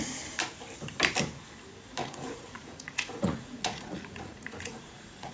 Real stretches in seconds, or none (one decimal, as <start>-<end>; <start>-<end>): 0.0-2.0